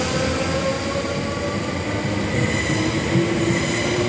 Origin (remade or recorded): recorded